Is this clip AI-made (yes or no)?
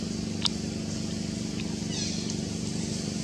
no